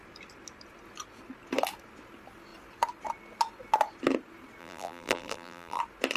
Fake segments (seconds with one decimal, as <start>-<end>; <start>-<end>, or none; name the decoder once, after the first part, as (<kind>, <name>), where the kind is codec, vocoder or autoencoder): 4.6-5.8 (vocoder, BigVGAN v2)